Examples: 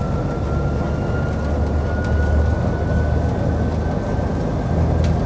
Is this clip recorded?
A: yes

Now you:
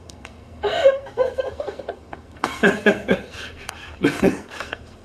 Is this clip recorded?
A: no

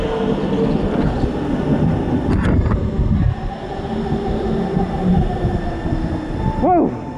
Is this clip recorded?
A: yes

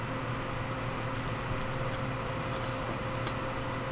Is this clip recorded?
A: yes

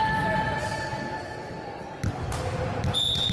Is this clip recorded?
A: yes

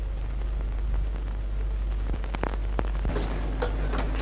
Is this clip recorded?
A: yes